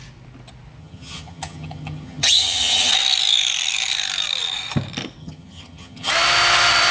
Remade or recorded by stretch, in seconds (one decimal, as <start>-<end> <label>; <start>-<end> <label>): 0.0-0.8 recorded; 0.8-2.9 remade; 2.9-5.2 recorded; 5.2-6.1 remade; 6.1-6.9 recorded